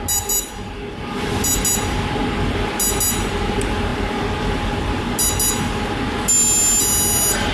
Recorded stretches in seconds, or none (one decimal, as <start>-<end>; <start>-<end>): 0.0-7.5